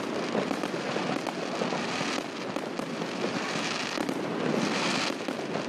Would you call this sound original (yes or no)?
yes